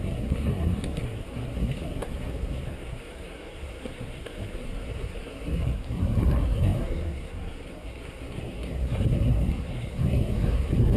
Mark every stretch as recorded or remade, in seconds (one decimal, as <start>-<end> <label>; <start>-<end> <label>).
0.0-11.0 remade